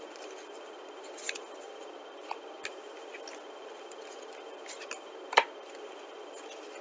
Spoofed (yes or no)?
no